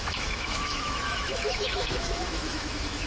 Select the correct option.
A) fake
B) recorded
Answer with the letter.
A